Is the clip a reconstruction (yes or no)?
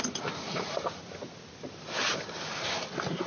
no